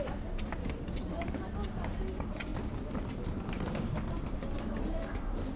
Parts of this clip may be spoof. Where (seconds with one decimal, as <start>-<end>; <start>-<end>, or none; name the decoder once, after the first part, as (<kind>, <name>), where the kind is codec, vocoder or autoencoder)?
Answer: none